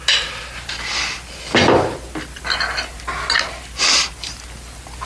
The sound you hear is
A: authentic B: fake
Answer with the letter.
A